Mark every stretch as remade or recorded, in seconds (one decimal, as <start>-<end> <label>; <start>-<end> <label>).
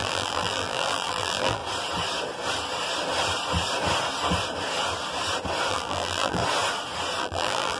0.0-1.6 remade; 1.6-5.7 recorded; 5.7-6.4 remade; 6.4-7.2 recorded; 7.2-7.8 remade